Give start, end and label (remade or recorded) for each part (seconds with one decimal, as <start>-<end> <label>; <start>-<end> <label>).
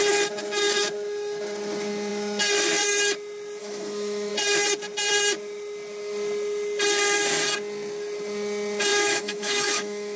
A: 0.0-3.6 recorded; 3.6-4.3 remade; 4.3-8.9 recorded; 8.9-10.2 remade